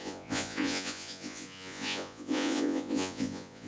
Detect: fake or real fake